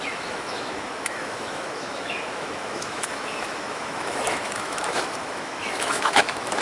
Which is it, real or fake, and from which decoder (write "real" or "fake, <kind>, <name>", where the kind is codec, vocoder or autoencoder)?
fake, autoencoder, DAC-VAE